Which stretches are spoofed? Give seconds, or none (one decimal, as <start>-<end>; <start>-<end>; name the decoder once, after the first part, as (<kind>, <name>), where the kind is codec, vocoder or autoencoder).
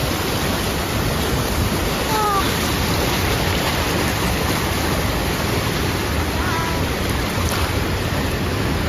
0.0-2.4 (vocoder, BigVGAN v2); 6.0-7.9